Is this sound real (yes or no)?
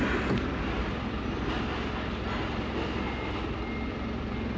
yes